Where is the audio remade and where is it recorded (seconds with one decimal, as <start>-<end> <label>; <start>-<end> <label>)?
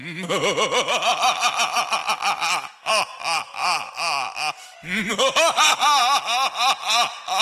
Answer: 0.0-7.4 recorded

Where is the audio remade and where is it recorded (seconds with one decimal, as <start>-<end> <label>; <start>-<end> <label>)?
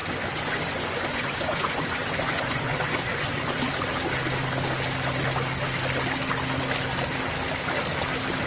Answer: 0.0-3.6 remade; 3.6-8.5 recorded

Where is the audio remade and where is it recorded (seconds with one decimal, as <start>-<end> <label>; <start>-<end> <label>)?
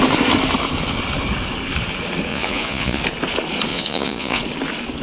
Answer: 0.0-2.3 recorded; 2.3-3.0 remade; 3.0-3.7 recorded; 3.7-4.4 remade; 4.4-5.0 recorded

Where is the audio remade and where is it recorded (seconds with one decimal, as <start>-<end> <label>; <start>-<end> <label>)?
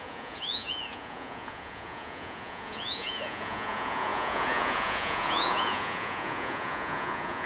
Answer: 0.0-7.5 remade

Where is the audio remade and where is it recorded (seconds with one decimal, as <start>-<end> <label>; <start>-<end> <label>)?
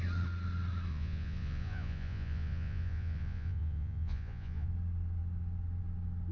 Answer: 0.0-0.9 recorded; 0.9-4.7 remade; 4.7-6.3 recorded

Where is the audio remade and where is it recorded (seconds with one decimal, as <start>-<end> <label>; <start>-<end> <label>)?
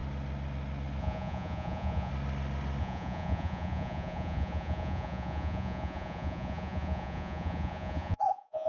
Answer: 0.0-1.0 recorded; 1.0-2.1 remade; 2.1-2.8 recorded; 2.8-8.7 remade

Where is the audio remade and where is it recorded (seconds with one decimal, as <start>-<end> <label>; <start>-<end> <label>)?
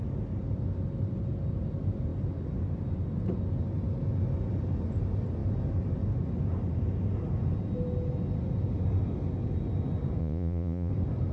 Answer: 0.0-10.2 recorded; 10.2-10.9 remade; 10.9-11.3 recorded